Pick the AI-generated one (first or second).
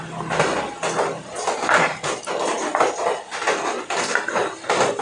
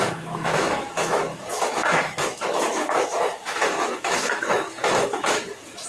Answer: second